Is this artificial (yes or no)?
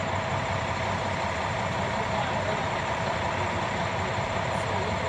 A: no